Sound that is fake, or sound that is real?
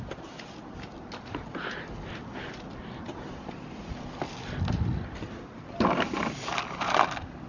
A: real